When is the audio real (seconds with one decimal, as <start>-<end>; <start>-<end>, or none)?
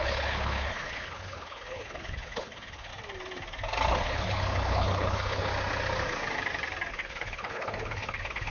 2.9-3.9; 5.5-6.9